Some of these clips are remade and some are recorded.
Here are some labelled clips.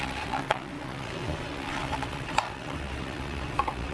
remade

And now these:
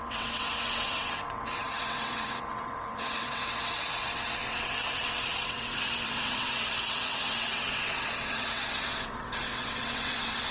remade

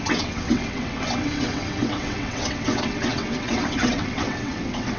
remade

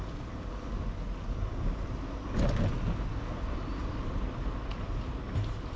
recorded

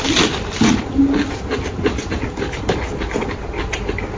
recorded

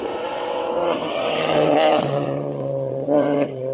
remade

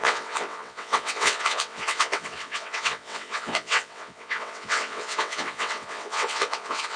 remade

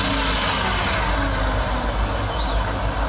recorded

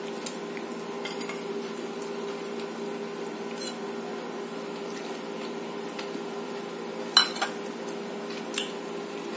recorded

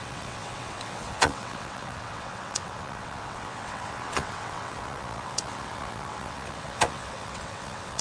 remade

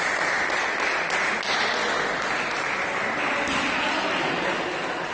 recorded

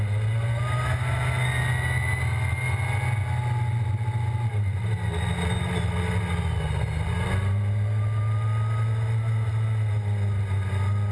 recorded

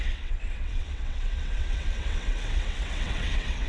remade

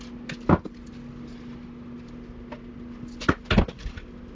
recorded